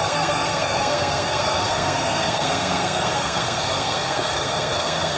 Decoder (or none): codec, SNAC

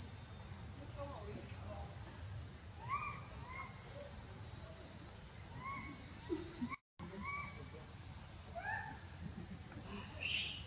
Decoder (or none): none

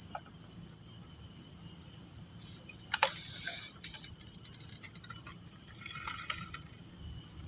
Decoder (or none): vocoder, BigVGAN v2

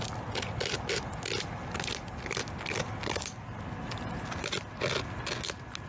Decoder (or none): none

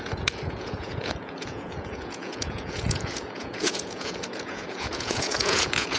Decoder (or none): vocoder, Vocos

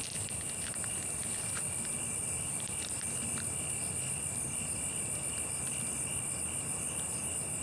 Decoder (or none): none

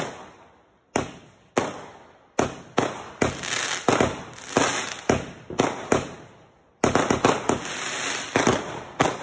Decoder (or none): none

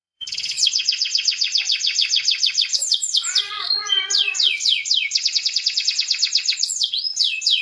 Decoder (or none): vocoder, Vocos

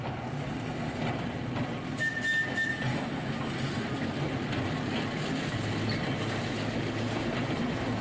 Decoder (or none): none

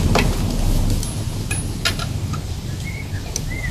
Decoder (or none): none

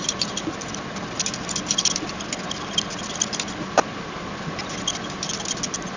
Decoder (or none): none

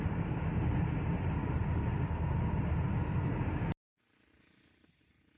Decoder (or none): none